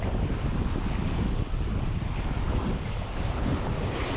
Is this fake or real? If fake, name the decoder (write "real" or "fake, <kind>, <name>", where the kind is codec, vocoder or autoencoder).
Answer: real